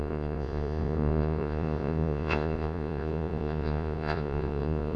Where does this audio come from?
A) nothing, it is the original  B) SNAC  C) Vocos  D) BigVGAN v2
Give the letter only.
C